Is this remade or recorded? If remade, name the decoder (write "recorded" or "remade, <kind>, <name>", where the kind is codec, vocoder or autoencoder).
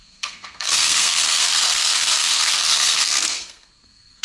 remade, codec, SNAC